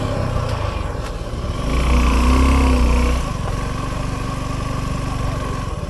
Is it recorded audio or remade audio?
recorded